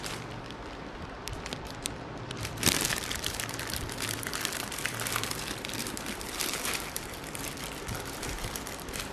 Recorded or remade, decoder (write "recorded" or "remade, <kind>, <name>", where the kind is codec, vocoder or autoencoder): remade, vocoder, BigVGAN v2